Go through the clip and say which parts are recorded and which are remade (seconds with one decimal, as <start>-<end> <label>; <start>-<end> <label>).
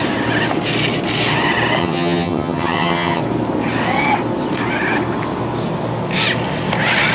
0.0-1.8 recorded; 1.8-3.2 remade; 3.2-7.1 recorded